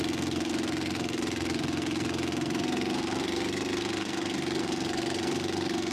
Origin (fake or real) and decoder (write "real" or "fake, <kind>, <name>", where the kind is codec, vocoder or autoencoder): fake, codec, SNAC